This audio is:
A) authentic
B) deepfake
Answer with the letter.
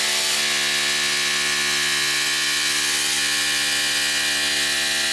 A